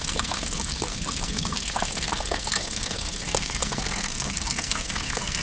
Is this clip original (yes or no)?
no